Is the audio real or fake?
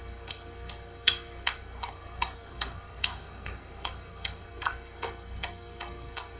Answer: fake